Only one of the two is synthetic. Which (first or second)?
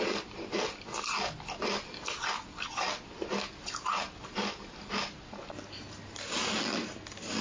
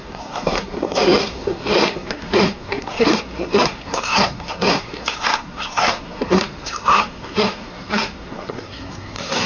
second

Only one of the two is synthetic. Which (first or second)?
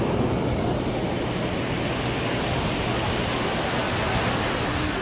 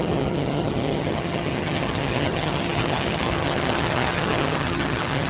second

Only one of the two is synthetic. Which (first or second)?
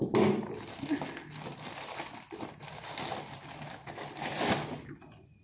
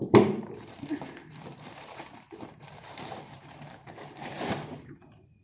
second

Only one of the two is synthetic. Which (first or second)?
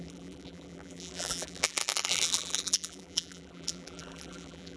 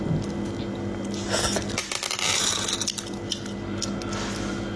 first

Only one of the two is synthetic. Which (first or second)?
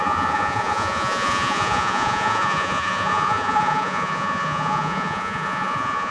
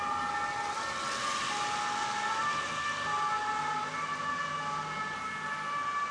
first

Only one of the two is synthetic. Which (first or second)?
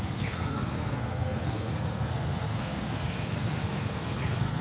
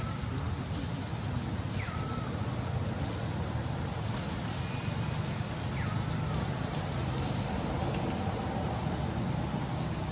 first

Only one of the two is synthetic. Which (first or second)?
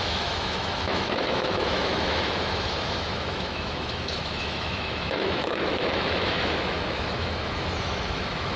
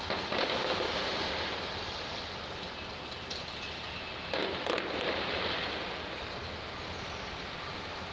first